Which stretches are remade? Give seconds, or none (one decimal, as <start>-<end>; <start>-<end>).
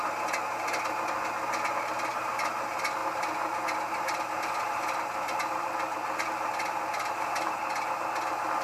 none